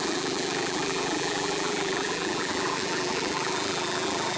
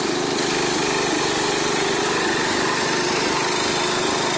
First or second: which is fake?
first